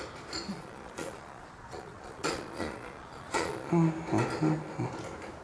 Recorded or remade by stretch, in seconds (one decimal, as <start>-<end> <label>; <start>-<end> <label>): 0.0-0.5 recorded; 0.5-3.7 remade; 3.7-5.4 recorded